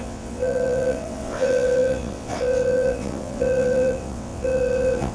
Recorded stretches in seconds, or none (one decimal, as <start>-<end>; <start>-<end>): none